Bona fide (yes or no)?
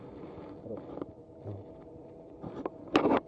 yes